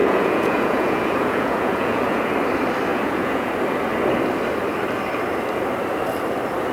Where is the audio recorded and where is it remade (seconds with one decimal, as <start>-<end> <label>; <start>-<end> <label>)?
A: 0.0-2.3 remade; 2.3-2.9 recorded; 2.9-3.5 remade; 3.5-6.7 recorded